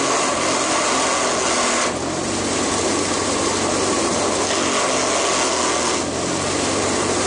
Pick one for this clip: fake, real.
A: real